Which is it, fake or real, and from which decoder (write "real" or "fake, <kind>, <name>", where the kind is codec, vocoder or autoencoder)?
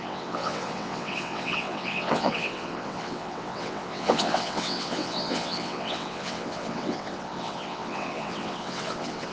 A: fake, vocoder, WaveNeXt